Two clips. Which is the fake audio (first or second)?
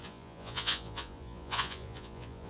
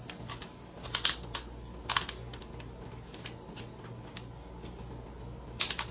first